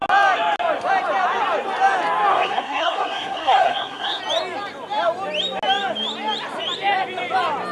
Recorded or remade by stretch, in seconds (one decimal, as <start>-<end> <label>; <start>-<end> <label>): 0.0-2.3 recorded; 2.3-4.2 remade; 4.2-7.7 recorded